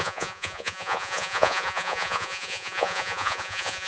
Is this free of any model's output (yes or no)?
no